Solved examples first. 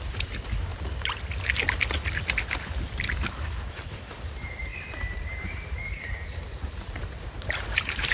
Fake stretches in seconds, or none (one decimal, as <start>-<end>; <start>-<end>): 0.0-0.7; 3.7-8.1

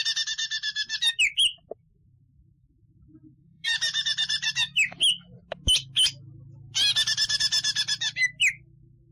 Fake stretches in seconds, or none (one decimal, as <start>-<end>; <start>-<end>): 1.6-4.5

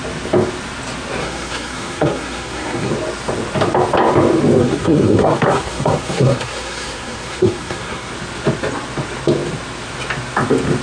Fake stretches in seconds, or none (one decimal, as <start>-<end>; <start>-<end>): 1.2-2.9; 4.6-8.1